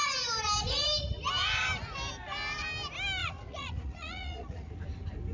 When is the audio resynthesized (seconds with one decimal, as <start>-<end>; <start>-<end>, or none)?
3.2-4.7